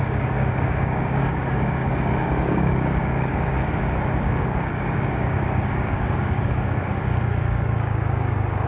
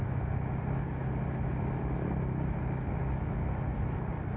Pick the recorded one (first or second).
second